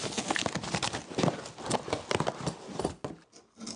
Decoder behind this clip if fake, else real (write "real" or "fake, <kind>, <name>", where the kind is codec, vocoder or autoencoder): real